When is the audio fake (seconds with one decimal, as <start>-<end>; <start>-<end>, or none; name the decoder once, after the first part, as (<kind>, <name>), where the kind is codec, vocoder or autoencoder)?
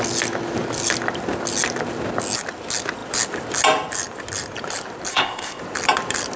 5.1-5.6 (codec, ZipCodec)